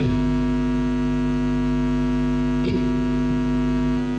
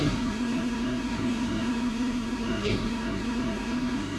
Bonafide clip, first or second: first